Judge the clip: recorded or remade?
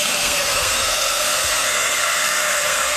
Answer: remade